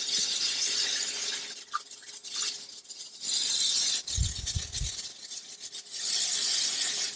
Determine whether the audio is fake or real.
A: real